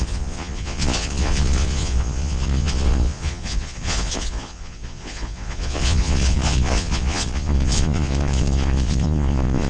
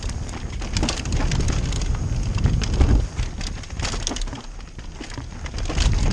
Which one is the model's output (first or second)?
first